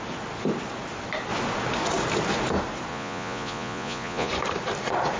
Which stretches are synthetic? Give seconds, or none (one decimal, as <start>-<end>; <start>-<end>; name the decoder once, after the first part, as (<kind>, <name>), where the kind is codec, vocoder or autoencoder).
2.9-4.3 (vocoder, Vocos)